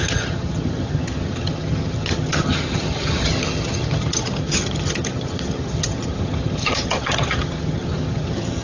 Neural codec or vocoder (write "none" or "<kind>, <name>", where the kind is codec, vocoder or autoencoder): vocoder, HiFi-GAN